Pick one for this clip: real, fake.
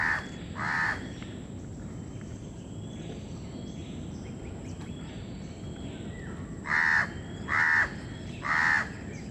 real